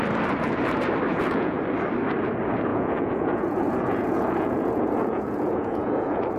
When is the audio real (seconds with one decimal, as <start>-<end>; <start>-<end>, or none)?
0.0-1.1; 1.6-2.7